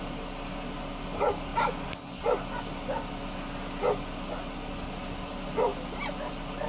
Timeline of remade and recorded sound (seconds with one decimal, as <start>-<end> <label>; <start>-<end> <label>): 0.0-6.7 recorded